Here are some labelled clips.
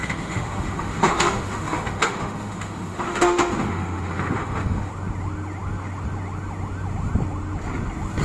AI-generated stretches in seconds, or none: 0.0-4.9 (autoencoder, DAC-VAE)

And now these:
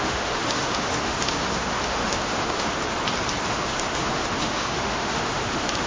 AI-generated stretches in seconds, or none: 0.0-2.8 (autoencoder, DAC-VAE); 3.5-5.9

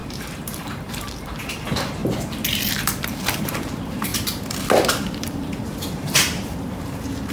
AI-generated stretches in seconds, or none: 0.0-2.0 (vocoder, BigVGAN v2); 2.7-4.1; 5.0-7.3

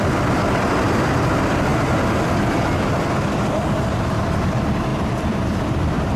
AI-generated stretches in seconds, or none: 0.0-1.7 (vocoder, BigVGAN v2); 4.0-6.2

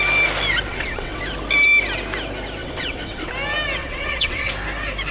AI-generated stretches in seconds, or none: 0.7-1.2 (vocoder, WaveNeXt); 2.6-3.3; 3.8-4.5